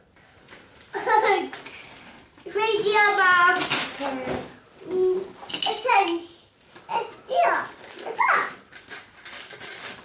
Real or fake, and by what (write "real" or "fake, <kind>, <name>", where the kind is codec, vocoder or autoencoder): real